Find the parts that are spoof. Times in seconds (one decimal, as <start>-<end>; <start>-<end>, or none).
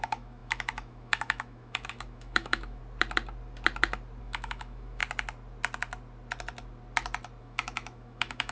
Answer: 0.0-2.8; 4.2-5.0; 7.4-8.5